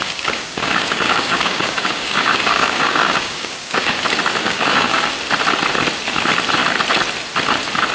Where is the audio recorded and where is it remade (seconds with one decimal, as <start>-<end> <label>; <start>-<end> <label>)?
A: 0.0-4.0 remade; 4.0-4.4 recorded; 4.4-5.1 remade; 5.1-7.9 recorded